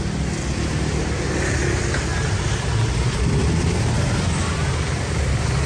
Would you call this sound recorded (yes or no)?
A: yes